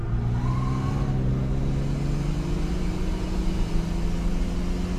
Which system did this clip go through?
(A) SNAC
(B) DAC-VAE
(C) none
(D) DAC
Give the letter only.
C